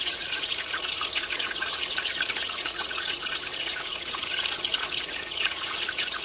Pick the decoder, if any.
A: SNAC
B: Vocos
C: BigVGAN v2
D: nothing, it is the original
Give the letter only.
B